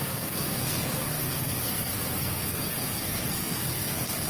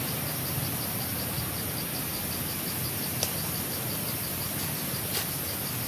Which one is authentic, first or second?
second